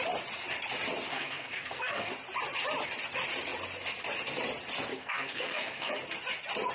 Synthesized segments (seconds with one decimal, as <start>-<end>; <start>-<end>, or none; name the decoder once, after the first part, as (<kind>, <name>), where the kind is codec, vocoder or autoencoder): 1.1-2.1 (codec, SNAC); 4.9-5.9